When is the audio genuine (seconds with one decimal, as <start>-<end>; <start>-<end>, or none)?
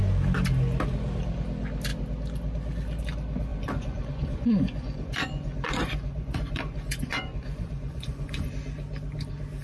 0.0-3.5; 8.5-9.6